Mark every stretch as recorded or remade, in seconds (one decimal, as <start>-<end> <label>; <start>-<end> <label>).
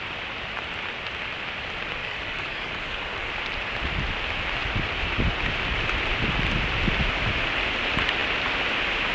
0.0-2.0 recorded; 2.0-3.3 remade; 3.3-9.1 recorded